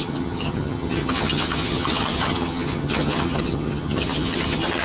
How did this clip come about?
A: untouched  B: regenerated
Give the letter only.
B